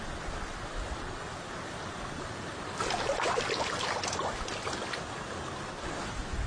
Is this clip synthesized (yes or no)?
no